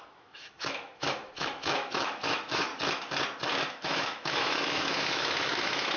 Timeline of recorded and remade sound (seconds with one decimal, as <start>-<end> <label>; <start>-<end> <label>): 0.0-2.7 remade; 2.7-3.7 recorded; 3.7-6.0 remade